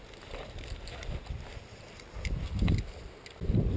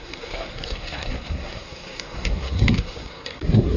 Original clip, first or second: first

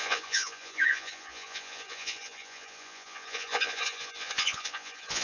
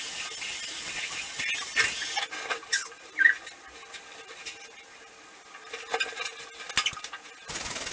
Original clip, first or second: second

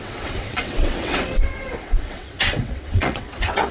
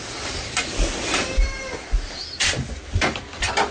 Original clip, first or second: second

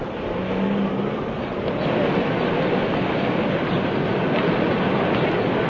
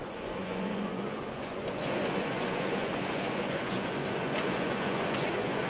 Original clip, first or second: first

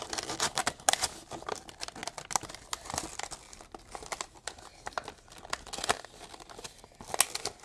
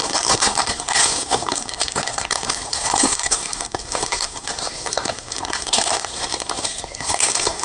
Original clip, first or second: first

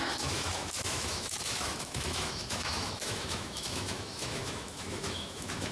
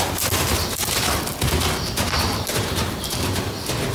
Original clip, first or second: second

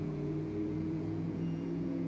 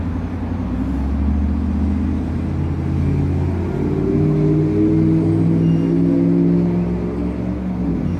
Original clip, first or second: second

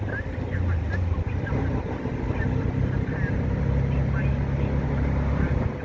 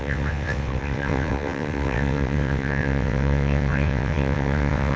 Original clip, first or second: first